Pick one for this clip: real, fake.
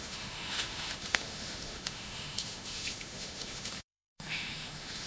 fake